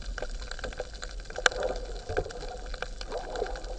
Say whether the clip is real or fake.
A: real